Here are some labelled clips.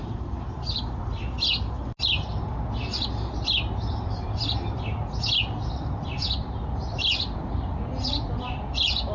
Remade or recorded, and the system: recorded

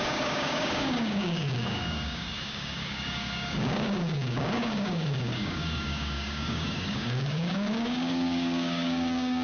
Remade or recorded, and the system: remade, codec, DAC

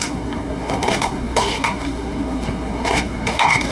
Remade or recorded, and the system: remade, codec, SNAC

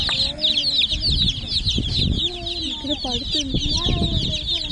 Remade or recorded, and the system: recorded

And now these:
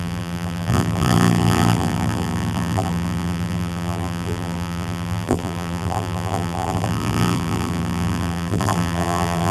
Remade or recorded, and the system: remade, vocoder, BigVGAN v2